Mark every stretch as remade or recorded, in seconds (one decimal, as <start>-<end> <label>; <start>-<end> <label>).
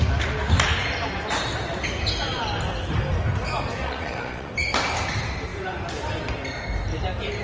0.0-3.8 recorded; 3.8-4.5 remade; 4.5-7.4 recorded